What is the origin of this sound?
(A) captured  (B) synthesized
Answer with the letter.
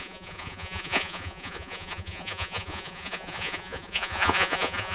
B